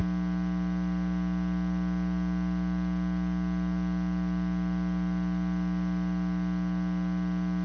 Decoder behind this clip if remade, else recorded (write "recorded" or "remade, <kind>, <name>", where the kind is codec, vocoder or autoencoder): recorded